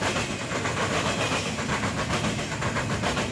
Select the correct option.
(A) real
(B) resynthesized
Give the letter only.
A